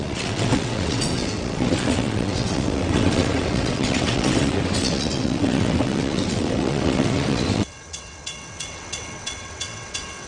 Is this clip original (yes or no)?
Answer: no